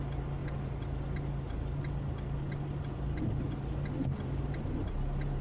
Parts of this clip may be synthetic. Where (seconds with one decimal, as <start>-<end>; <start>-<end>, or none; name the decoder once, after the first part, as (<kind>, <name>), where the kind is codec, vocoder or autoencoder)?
none

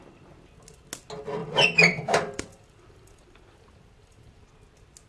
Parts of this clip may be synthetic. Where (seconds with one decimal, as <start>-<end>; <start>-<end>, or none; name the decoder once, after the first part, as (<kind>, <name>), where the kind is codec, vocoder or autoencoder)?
1.4-4.5 (vocoder, BigVGAN v2)

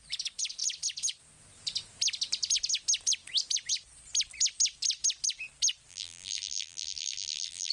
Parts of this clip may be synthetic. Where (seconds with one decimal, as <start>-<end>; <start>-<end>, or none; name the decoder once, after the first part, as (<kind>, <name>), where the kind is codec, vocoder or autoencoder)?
5.9-7.7 (vocoder, BigVGAN v2)

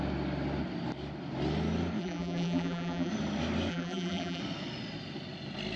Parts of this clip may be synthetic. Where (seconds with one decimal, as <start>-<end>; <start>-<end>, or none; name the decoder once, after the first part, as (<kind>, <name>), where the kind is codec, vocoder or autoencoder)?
2.0-3.1 (vocoder, BigVGAN v2); 3.7-4.4

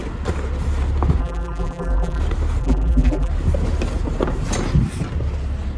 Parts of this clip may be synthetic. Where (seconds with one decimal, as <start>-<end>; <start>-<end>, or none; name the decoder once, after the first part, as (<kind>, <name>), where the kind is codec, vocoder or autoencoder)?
1.2-2.2 (vocoder, BigVGAN v2); 2.6-3.3